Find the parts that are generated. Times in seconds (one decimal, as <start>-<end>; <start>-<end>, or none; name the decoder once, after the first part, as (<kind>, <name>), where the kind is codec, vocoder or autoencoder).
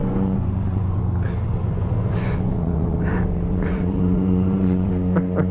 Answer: 0.0-1.0 (vocoder, Vocos); 1.6-4.9